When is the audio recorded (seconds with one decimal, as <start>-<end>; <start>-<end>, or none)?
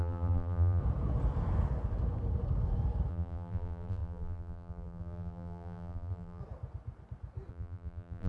0.8-3.1; 6.4-7.5